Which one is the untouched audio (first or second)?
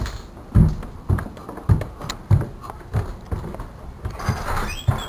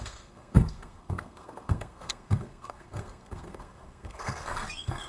first